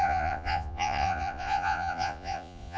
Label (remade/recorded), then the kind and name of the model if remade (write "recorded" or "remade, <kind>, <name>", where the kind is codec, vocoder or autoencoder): remade, vocoder, Vocos